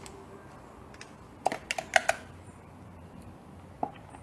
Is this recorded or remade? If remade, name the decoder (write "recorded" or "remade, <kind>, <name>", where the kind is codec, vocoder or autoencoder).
recorded